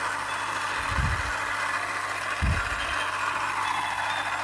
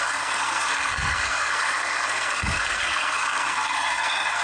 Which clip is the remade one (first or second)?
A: second